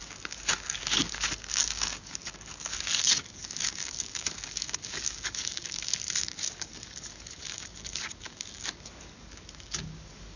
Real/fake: fake